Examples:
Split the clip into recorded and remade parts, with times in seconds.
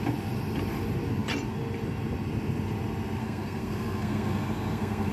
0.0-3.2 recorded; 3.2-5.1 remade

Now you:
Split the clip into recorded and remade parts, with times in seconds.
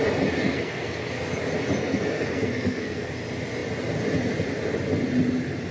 0.0-0.4 recorded; 0.4-1.3 remade; 1.3-1.8 recorded; 1.8-3.1 remade; 3.1-5.7 recorded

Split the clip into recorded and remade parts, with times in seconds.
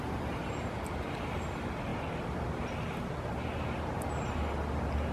0.0-5.1 recorded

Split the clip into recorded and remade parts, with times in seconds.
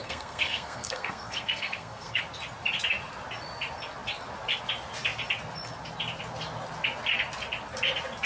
0.0-2.2 remade; 2.2-8.3 recorded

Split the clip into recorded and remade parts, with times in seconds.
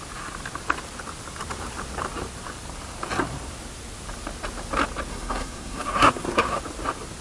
0.0-5.1 recorded; 5.1-6.6 remade; 6.6-7.2 recorded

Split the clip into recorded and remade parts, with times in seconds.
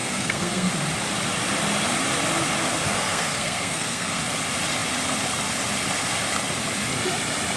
0.0-0.7 remade; 0.7-2.8 recorded; 2.8-4.2 remade; 4.2-7.6 recorded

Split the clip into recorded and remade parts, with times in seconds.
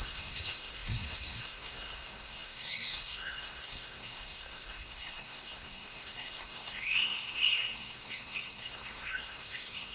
0.0-9.9 remade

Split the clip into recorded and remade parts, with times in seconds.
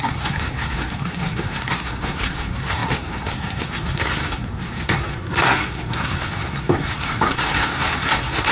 0.0-8.5 remade